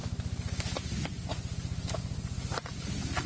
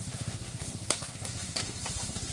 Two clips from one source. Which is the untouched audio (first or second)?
first